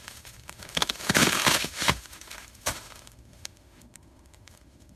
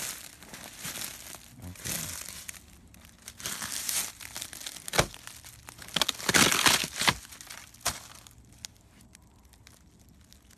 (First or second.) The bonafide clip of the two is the second